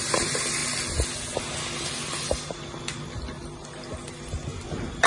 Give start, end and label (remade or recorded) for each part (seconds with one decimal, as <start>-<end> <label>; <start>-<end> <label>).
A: 0.0-0.6 remade; 0.6-2.1 recorded; 2.1-4.5 remade; 4.5-5.1 recorded